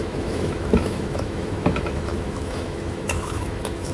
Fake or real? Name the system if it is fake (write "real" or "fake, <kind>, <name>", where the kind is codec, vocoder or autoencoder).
fake, autoencoder, DAC-VAE